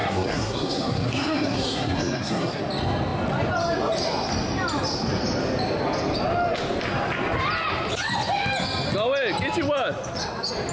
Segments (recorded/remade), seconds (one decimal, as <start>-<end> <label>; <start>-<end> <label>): 0.0-2.6 remade; 2.6-10.7 recorded